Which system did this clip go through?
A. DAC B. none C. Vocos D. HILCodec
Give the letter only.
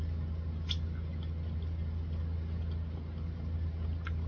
B